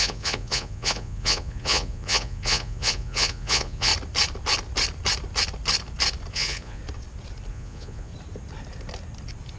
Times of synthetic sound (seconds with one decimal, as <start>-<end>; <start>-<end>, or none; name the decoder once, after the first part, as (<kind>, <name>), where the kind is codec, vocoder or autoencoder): 0.0-3.9 (vocoder, Vocos); 6.3-6.8; 7.5-8.1